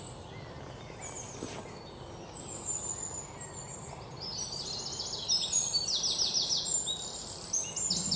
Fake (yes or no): no